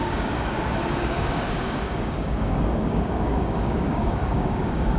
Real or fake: fake